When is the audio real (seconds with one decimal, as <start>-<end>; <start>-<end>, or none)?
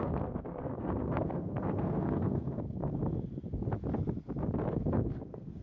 3.0-4.7